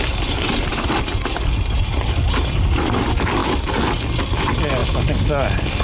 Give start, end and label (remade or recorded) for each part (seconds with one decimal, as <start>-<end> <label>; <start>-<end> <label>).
0.0-5.8 recorded

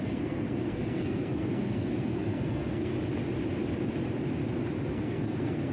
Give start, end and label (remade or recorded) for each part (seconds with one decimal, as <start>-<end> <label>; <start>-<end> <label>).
0.0-2.9 remade; 2.9-4.9 recorded; 4.9-5.7 remade